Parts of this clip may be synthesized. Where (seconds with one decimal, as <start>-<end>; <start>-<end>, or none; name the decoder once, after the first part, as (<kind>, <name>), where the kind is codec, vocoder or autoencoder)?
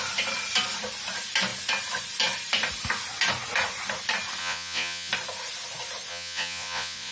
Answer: 4.4-5.1 (vocoder, Vocos); 6.1-7.1